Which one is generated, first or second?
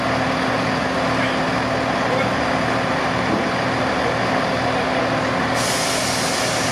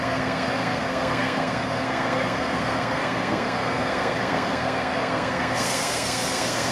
second